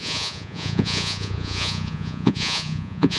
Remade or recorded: remade